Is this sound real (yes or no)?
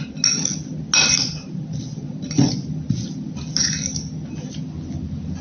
yes